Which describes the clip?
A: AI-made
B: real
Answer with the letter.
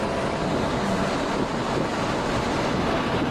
B